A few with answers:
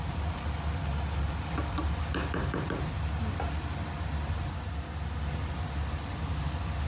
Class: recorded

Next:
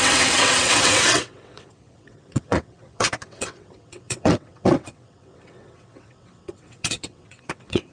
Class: remade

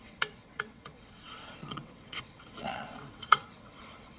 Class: remade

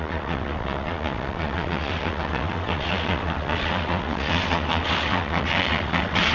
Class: remade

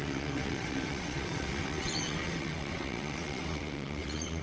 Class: remade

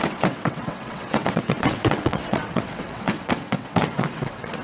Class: remade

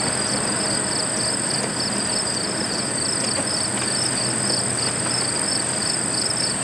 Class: recorded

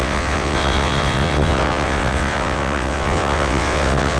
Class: remade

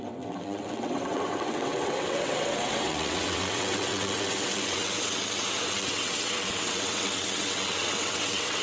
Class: remade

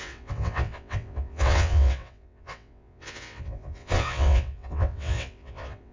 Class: remade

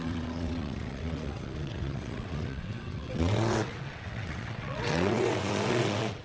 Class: remade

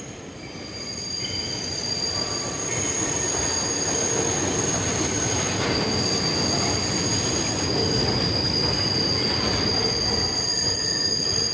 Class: recorded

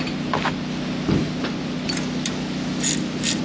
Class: recorded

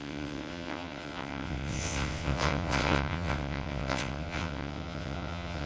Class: remade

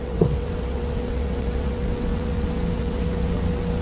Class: remade